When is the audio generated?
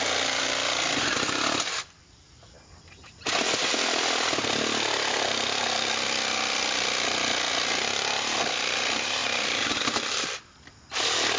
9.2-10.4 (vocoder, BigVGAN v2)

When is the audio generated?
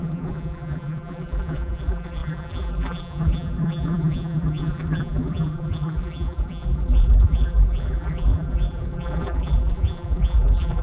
0.0-10.8 (vocoder, BigVGAN v2)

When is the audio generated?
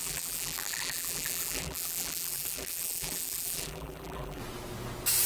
0.0-4.4 (vocoder, BigVGAN v2)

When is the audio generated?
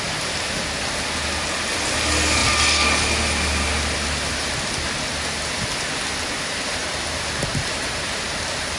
none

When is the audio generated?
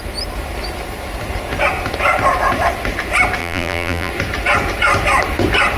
3.4-4.1 (vocoder, BigVGAN v2)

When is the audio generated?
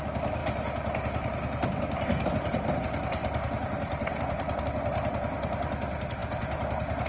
3.2-4.6 (vocoder, BigVGAN v2)